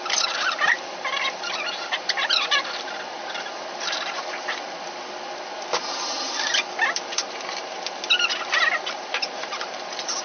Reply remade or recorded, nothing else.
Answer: remade